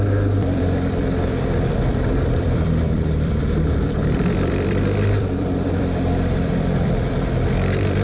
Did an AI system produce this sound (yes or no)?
yes